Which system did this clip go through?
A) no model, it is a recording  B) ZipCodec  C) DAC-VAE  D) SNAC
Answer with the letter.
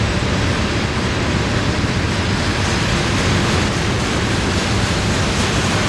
A